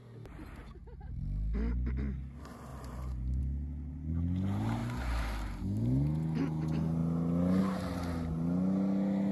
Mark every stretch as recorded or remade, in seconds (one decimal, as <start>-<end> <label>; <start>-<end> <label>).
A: 0.0-2.7 recorded; 2.7-3.4 remade; 3.4-9.3 recorded